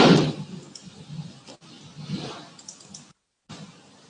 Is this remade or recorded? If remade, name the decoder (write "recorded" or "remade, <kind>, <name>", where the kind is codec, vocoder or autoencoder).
recorded